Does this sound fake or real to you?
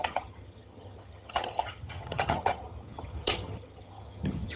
fake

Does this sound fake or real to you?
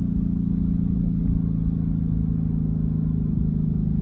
real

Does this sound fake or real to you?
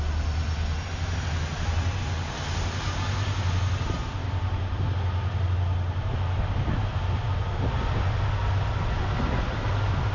real